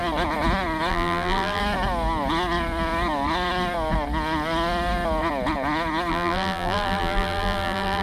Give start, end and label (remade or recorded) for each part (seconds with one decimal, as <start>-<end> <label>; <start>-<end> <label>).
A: 0.0-0.9 recorded; 0.9-1.6 remade; 1.6-6.1 recorded; 6.1-8.0 remade